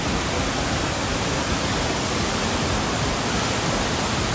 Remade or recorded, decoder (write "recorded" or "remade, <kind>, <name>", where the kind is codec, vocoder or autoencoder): recorded